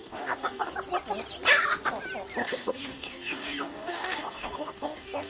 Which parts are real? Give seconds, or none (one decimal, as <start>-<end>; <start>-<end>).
0.7-2.4